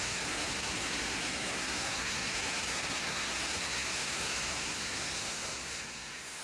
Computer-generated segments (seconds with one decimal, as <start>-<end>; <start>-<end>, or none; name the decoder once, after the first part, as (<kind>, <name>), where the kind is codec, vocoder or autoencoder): 0.0-6.4 (codec, SNAC)